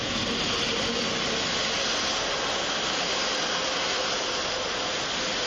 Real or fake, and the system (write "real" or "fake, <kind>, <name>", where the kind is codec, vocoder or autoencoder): real